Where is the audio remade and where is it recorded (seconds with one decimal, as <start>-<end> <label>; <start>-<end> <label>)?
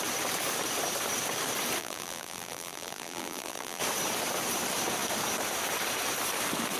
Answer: 0.0-1.8 recorded; 1.8-3.8 remade; 3.8-6.8 recorded